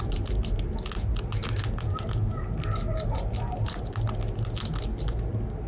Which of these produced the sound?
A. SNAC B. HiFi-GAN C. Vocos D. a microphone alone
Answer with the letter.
D